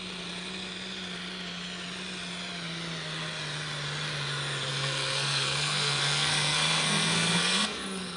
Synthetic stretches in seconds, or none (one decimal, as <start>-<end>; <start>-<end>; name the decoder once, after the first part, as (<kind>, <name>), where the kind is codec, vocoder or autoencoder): 4.7-8.2 (codec, SNAC)